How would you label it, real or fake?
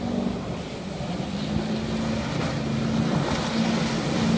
real